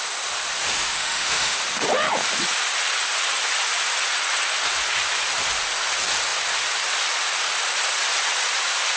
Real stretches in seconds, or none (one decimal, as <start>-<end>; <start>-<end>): 0.0-0.7; 1.6-9.0

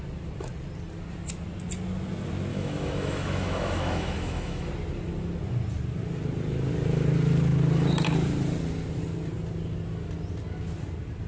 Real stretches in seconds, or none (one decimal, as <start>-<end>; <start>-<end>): 0.0-2.5; 4.7-11.3

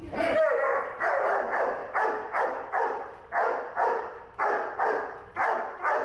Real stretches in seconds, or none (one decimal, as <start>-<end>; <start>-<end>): 0.0-6.0

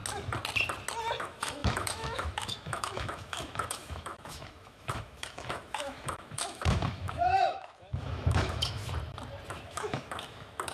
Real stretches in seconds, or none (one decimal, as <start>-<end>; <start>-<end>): 0.0-1.2; 8.8-9.5

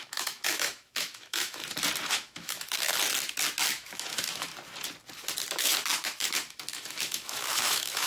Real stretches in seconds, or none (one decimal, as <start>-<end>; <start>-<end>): 1.6-2.1; 2.9-3.7; 4.5-5.6

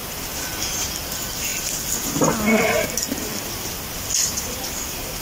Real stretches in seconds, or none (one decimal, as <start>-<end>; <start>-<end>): 0.0-5.2

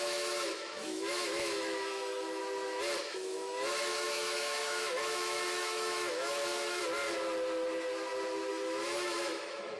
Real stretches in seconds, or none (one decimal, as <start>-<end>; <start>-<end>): 2.4-3.0; 6.8-8.5

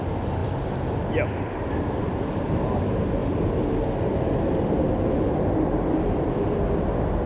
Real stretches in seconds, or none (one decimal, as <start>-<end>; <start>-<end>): 0.0-7.3